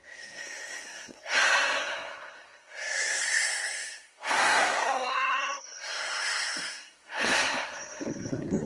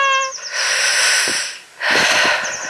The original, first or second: second